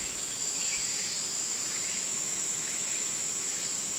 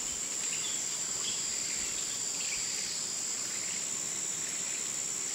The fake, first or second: first